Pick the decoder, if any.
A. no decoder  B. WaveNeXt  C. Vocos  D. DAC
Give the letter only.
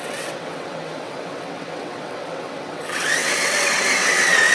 B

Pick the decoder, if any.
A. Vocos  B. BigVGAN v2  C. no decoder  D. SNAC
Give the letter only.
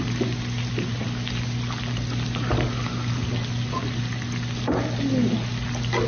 C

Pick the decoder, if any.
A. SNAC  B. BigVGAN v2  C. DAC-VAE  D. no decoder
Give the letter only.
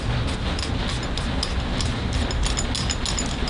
D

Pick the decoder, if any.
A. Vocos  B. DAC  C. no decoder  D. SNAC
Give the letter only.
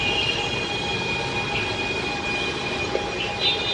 C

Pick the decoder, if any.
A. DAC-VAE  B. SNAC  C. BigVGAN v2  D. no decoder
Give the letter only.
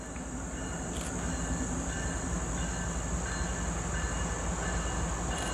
D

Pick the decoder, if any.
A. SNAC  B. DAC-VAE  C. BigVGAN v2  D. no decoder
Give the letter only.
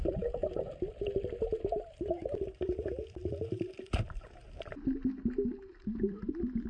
C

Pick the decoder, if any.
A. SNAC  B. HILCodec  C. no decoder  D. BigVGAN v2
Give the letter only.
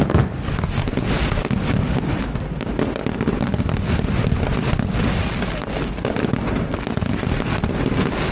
C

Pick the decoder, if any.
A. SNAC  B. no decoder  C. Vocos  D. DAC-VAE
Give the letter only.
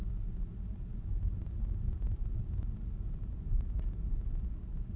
B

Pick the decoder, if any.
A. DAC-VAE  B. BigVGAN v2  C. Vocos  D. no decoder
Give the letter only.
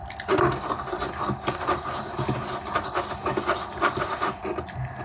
D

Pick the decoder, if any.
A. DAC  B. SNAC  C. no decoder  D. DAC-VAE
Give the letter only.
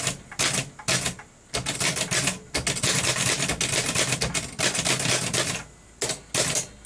C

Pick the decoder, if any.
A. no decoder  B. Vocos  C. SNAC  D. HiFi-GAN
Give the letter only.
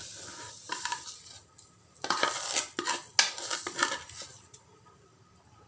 A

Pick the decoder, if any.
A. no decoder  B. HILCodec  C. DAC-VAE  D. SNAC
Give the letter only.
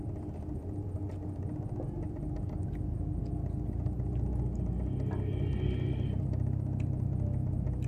A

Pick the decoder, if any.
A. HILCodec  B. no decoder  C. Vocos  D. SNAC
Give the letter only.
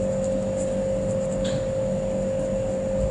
B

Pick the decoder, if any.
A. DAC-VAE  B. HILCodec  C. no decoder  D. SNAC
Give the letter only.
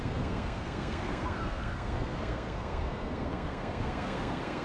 D